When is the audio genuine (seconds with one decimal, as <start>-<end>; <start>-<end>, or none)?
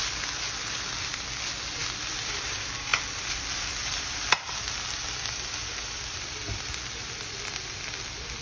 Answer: 0.0-8.4